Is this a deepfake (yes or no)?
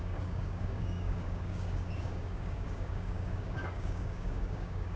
yes